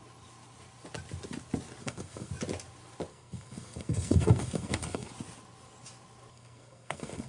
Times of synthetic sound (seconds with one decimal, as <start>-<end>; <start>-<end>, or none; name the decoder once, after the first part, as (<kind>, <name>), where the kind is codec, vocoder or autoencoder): 1.8-2.3 (codec, SNAC); 3.1-5.1; 6.3-7.3